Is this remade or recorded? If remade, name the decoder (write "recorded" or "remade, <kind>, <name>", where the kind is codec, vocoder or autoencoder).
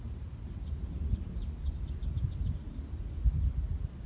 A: recorded